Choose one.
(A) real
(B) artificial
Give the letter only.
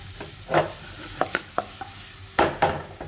A